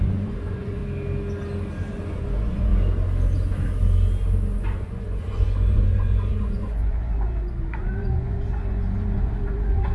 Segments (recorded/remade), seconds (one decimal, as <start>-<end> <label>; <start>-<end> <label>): 0.0-0.8 remade; 0.8-2.1 recorded; 2.1-2.7 remade; 2.7-4.6 recorded; 4.6-9.9 remade